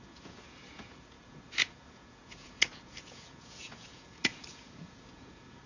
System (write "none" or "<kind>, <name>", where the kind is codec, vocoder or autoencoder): vocoder, Vocos